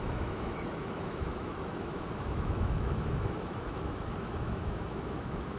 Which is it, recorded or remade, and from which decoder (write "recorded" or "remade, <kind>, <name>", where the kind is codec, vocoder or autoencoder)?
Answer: remade, autoencoder, DAC-VAE